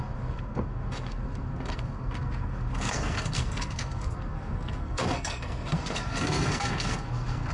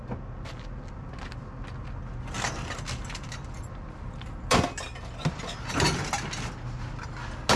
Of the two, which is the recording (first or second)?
second